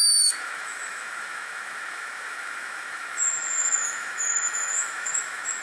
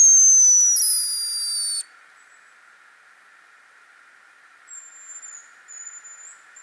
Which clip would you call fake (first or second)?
first